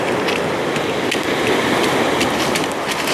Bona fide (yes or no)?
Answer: yes